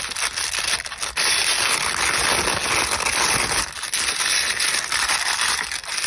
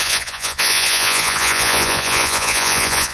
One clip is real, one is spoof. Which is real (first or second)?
first